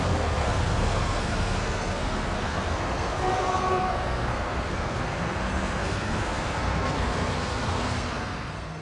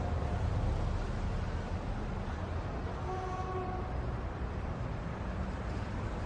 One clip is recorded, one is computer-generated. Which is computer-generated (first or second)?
first